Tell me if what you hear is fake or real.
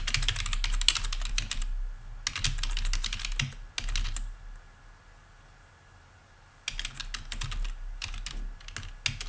real